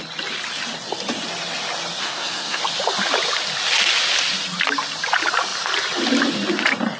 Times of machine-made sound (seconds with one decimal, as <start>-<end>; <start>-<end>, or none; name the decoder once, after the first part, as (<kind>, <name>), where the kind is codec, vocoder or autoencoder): 2.0-2.6 (codec, SNAC)